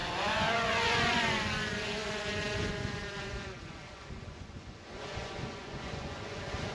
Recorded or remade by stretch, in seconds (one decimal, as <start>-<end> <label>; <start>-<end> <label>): 0.0-6.7 remade